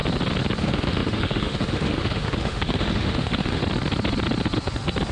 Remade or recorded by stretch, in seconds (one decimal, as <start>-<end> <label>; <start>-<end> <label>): 0.0-0.6 recorded; 0.6-3.6 remade; 3.6-5.1 recorded

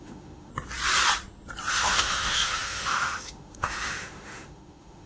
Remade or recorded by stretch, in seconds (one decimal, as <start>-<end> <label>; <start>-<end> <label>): 0.0-0.5 remade; 0.5-1.7 recorded; 1.7-5.1 remade